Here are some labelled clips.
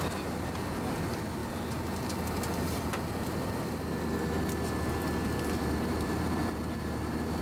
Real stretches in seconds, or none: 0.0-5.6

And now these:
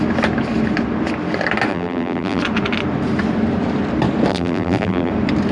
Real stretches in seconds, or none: 0.0-1.7; 2.4-4.3; 5.1-5.5

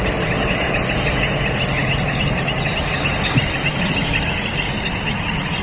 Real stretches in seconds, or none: 0.0-1.8; 2.8-5.6

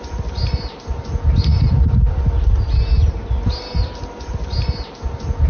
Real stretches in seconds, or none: 0.0-5.5

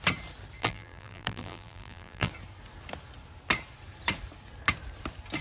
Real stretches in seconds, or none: 0.0-0.6; 2.3-5.4

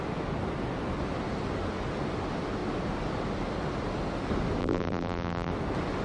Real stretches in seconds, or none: 0.0-4.6; 5.5-6.0

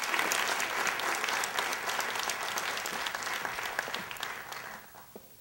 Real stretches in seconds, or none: 0.0-5.4

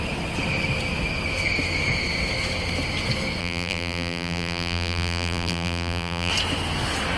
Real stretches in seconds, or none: 0.0-3.4; 6.3-7.2